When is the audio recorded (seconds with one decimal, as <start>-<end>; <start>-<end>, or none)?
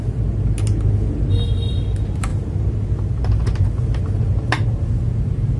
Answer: 0.0-5.6